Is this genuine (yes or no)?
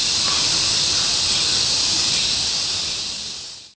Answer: yes